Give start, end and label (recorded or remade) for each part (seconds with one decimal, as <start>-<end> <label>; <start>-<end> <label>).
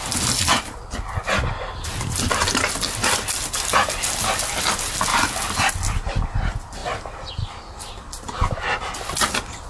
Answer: 0.0-5.1 recorded; 5.1-5.7 remade; 5.7-6.8 recorded; 6.8-7.3 remade; 7.3-9.7 recorded